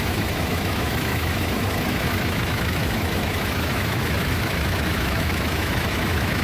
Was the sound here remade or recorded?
remade